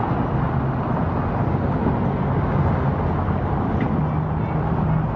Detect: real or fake real